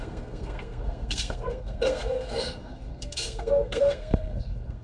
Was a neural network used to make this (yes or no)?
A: yes